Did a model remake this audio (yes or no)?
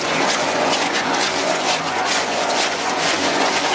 yes